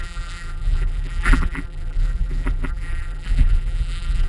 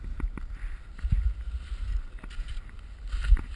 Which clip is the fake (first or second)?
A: first